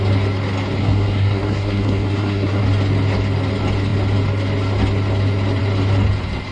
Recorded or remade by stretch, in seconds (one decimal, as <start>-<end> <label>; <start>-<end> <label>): 0.0-0.8 recorded; 0.8-2.6 remade; 2.6-6.5 recorded

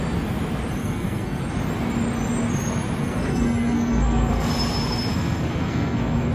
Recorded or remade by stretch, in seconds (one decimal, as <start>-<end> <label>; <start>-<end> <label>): 0.0-0.8 recorded; 0.8-1.4 remade; 1.4-3.0 recorded; 3.0-4.5 remade; 4.5-5.1 recorded; 5.1-6.3 remade

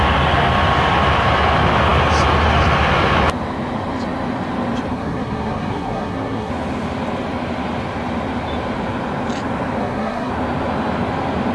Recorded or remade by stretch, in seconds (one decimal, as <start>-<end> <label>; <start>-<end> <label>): 0.0-4.9 recorded; 4.9-6.5 remade; 6.5-9.8 recorded; 9.8-10.3 remade; 10.3-11.5 recorded

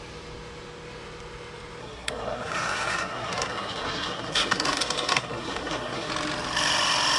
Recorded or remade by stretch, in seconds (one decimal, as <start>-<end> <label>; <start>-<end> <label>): 0.0-1.8 recorded; 1.8-6.1 remade; 6.1-7.2 recorded

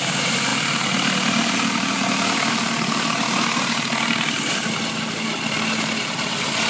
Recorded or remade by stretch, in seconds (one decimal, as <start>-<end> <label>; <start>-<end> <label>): 0.0-6.7 recorded

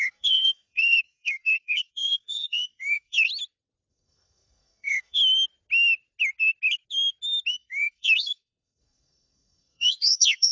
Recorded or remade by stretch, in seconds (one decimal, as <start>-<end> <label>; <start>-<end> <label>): 0.0-3.3 remade; 3.3-3.9 recorded; 3.9-5.2 remade; 5.2-7.5 recorded; 7.5-10.5 remade

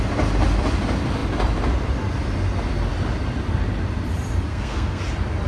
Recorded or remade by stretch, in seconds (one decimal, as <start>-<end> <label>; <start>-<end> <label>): 0.0-4.5 recorded; 4.5-5.0 remade; 5.0-5.5 recorded

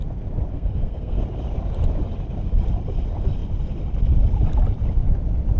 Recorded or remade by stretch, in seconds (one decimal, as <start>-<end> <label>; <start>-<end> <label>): 0.0-0.5 recorded; 0.5-1.2 remade; 1.2-5.6 recorded